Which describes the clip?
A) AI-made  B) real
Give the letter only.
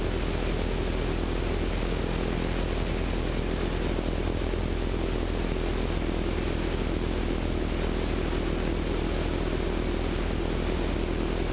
B